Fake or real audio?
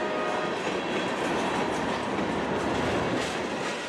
real